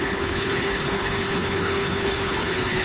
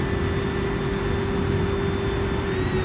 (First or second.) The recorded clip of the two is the second